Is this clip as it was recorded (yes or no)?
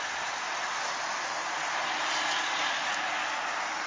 yes